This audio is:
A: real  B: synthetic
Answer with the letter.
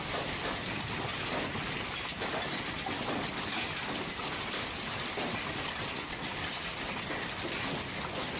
A